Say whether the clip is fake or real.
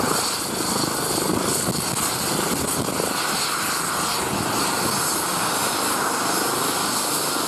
real